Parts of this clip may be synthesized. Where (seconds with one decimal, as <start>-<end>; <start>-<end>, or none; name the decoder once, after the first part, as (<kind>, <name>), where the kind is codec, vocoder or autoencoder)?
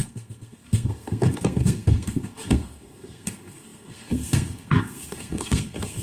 0.0-6.0 (codec, SNAC)